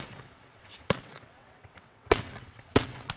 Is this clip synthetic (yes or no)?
yes